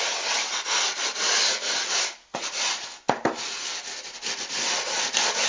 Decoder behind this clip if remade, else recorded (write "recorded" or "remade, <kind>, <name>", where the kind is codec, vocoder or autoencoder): recorded